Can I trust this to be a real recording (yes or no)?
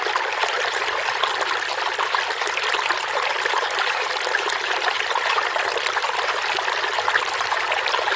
yes